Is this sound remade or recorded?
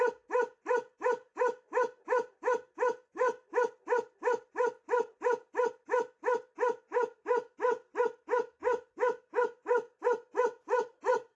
recorded